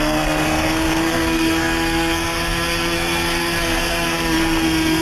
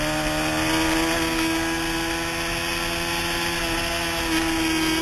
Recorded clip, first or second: second